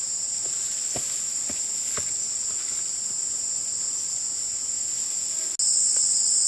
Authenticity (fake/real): real